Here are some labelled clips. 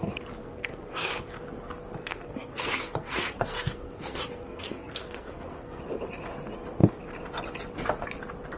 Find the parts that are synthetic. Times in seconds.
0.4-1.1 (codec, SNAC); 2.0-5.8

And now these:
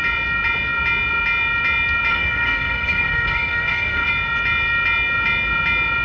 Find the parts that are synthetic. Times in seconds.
2.1-4.1 (codec, SNAC)

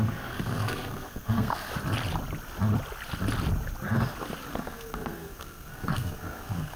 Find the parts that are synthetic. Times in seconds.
0.0-1.7 (codec, SNAC); 4.5-6.8

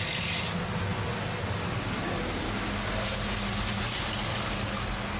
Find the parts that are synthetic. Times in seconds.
none

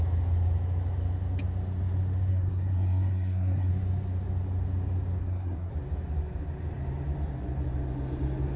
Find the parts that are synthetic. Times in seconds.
2.3-3.7 (codec, SNAC); 5.2-5.7

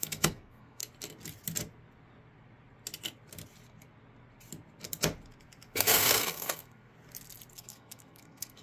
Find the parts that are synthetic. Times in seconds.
0.0-0.8 (codec, SNAC); 5.7-6.9; 7.5-8.6